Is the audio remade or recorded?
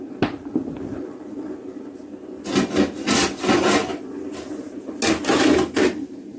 recorded